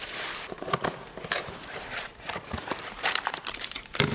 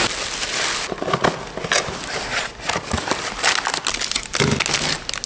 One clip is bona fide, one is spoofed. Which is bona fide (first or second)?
second